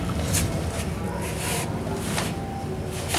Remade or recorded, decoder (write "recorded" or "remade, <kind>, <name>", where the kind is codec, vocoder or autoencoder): recorded